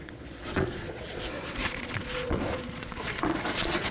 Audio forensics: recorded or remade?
remade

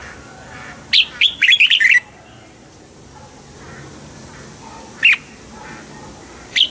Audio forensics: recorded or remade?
recorded